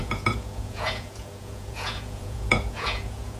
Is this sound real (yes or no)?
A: no